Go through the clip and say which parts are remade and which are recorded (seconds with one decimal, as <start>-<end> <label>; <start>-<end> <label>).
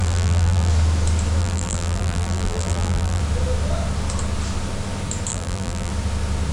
0.0-0.7 remade; 0.7-1.4 recorded; 1.4-3.2 remade; 3.2-5.3 recorded; 5.3-5.9 remade; 5.9-6.5 recorded